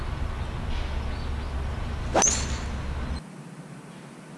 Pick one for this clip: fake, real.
real